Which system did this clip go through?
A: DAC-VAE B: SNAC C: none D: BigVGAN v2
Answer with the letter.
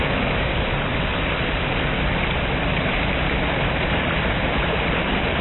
C